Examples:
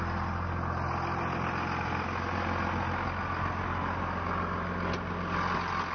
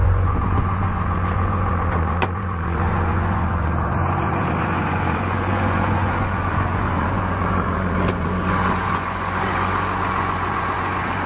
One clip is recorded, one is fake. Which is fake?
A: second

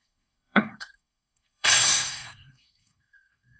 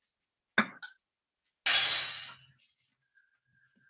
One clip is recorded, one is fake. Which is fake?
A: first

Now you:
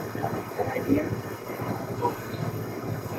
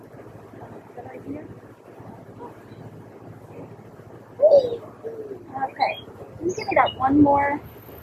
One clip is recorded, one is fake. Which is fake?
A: first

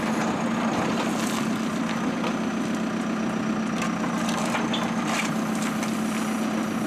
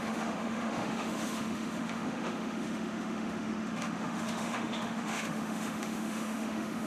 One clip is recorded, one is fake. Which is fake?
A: second